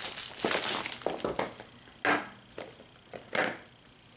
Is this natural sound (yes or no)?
yes